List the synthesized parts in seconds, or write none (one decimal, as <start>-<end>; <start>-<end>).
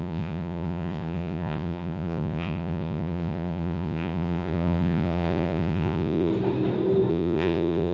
0.0-6.3; 7.1-7.9